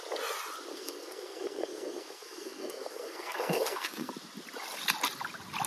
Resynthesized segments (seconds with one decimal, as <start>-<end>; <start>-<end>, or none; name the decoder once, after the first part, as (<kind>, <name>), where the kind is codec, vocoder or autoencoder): 0.7-4.1 (codec, SNAC)